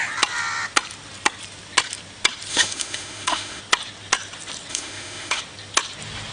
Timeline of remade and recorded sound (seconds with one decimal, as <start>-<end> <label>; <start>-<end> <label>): 0.0-2.5 recorded; 2.5-3.6 remade; 3.6-4.7 recorded; 4.7-5.4 remade; 5.4-6.3 recorded